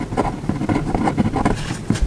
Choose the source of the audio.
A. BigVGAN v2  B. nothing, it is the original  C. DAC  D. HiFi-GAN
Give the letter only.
B